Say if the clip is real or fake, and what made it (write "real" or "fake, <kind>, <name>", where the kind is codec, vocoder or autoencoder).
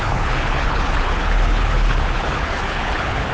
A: fake, codec, HILCodec